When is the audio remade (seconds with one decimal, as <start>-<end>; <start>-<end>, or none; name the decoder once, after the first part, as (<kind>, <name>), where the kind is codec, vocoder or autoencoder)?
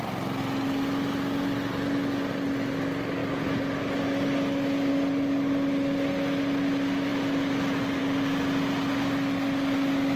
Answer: none